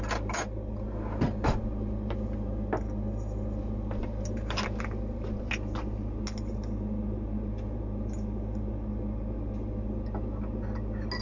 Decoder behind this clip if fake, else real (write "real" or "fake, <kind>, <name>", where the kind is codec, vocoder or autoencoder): real